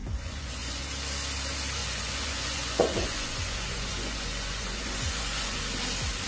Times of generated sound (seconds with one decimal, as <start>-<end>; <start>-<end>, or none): 0.0-0.8; 1.8-5.6

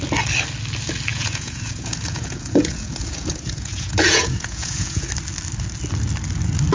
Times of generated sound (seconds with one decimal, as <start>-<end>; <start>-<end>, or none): 1.1-5.1